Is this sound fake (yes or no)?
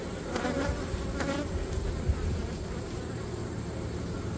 no